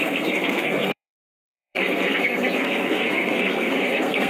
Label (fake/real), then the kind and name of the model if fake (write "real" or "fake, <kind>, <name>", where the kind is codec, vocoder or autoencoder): fake, codec, SNAC